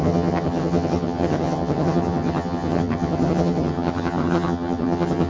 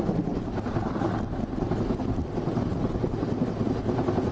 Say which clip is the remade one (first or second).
first